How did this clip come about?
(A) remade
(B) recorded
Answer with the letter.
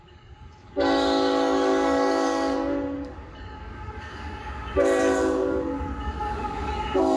A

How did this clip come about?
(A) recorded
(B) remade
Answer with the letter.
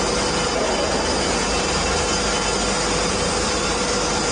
A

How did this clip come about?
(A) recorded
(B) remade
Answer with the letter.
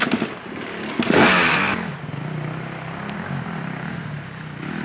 A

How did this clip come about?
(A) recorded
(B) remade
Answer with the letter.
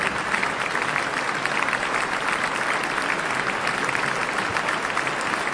A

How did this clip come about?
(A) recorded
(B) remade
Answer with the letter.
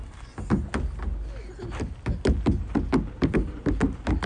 A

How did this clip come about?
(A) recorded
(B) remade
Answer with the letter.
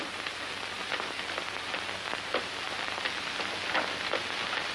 A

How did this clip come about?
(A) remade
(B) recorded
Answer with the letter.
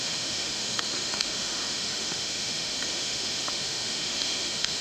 A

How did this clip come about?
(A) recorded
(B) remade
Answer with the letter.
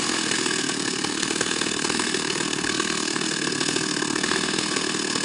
B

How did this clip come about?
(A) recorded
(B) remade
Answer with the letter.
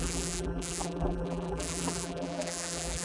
B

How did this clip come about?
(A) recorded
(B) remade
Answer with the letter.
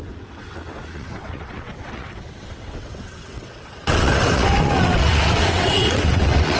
B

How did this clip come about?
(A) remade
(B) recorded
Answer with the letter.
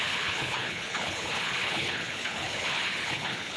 A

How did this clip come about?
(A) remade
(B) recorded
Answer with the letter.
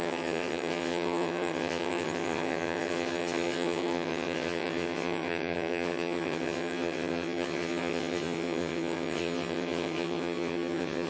A